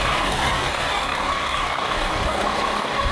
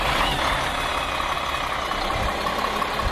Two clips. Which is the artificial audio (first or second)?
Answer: first